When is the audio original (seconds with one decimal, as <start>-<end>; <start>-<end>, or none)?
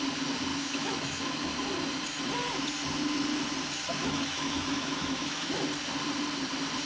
0.0-0.5; 1.5-4.0; 5.6-6.9